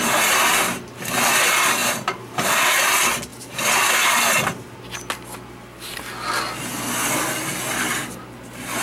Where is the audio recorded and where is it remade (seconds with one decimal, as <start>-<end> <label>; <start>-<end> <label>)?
0.0-1.8 recorded; 1.8-2.4 remade; 2.4-8.8 recorded